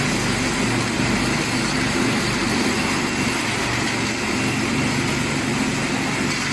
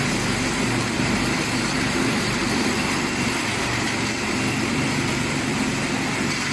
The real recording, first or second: first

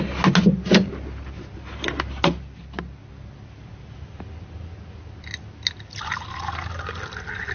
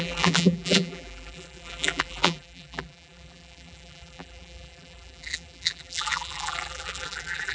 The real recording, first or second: first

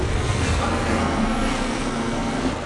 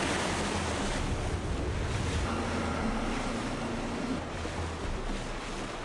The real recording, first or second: second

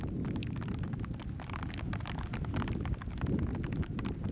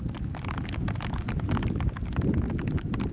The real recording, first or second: first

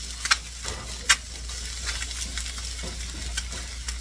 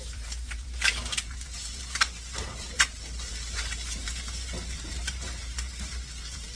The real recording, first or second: first